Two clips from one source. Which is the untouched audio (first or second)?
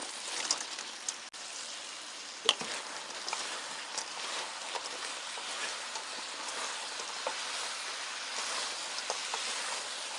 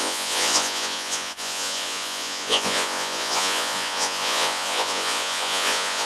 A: first